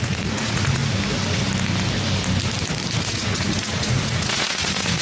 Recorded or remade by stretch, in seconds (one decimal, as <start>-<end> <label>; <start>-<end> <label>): 0.0-0.8 remade; 0.8-3.0 recorded; 3.0-5.0 remade